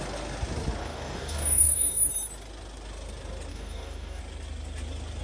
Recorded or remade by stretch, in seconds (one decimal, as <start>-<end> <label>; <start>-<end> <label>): 0.0-0.8 recorded; 0.8-2.1 remade; 2.1-3.5 recorded; 3.5-4.2 remade; 4.2-5.2 recorded